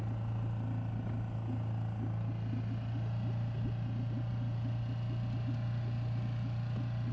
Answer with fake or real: real